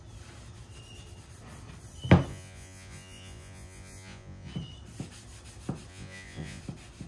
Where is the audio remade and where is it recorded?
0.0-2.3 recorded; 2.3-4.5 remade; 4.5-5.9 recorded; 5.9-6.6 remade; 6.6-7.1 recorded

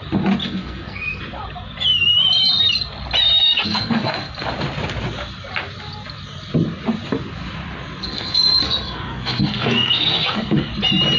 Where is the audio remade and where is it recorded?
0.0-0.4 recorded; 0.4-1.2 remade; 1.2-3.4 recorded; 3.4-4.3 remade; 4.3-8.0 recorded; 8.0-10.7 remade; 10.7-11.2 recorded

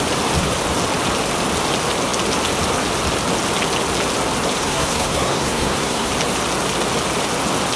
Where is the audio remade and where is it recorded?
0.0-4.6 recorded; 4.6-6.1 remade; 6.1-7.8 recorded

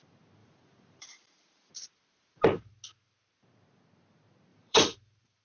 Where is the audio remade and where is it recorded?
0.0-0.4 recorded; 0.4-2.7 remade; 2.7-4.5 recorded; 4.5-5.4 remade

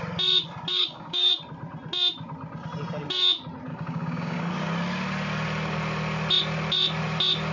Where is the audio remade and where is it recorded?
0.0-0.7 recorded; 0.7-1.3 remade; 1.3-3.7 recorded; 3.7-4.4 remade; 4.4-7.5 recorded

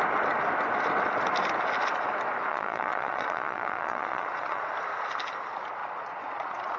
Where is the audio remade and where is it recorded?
0.0-2.5 recorded; 2.5-4.6 remade; 4.6-5.8 recorded; 5.8-6.8 remade

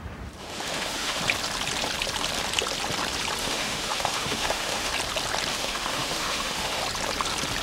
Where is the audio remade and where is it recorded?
0.0-0.4 recorded; 0.4-1.2 remade; 1.2-3.4 recorded; 3.4-4.9 remade; 4.9-5.5 recorded; 5.5-6.8 remade; 6.8-7.6 recorded